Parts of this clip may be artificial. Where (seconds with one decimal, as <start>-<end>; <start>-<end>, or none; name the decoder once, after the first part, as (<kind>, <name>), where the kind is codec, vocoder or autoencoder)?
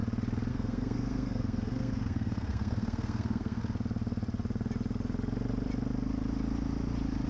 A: 0.5-3.6 (codec, SNAC)